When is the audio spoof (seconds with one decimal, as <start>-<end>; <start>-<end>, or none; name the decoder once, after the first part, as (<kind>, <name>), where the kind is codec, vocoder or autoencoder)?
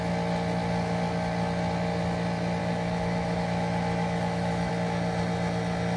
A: 2.6-4.7 (autoencoder, DAC-VAE)